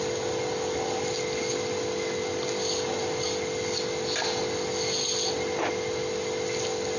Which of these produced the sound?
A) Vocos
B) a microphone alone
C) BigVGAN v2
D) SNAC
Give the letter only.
B